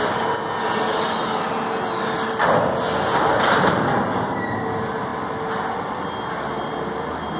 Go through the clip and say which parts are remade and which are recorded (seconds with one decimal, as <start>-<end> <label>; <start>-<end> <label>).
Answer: 0.0-7.4 recorded